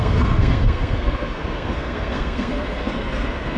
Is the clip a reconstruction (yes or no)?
yes